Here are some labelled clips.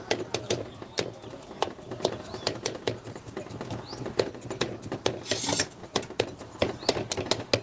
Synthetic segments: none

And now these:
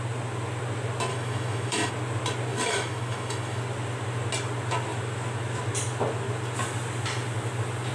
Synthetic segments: 1.1-1.9; 2.5-3.6

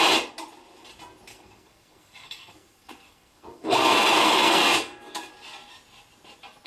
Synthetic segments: 1.3-5.3

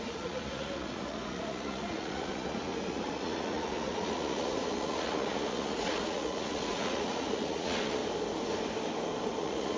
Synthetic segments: 0.0-8.0; 9.4-9.8

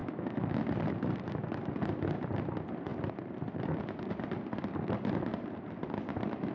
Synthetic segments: 0.0-0.6

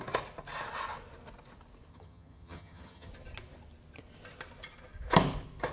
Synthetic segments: 1.9-3.1

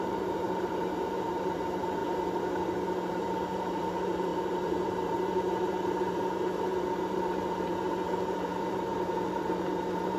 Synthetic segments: 0.0-2.0; 3.1-10.2

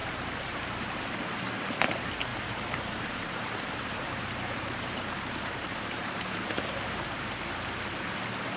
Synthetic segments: 0.0-1.0; 2.3-7.4